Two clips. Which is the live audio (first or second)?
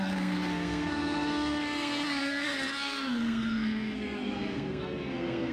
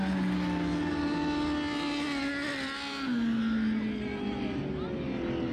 second